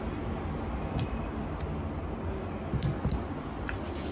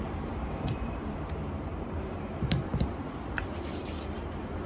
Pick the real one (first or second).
first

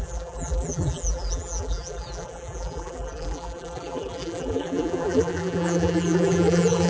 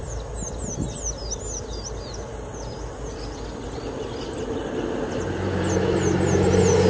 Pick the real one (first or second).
second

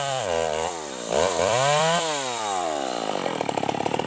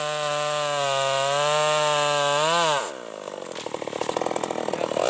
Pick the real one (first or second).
second